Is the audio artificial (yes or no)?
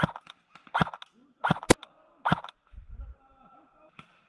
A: no